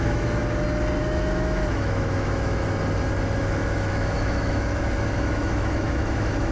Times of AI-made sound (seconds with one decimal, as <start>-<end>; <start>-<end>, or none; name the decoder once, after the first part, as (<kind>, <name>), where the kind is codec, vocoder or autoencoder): 0.0-0.4 (autoencoder, DAC-VAE); 1.0-2.6; 3.4-6.5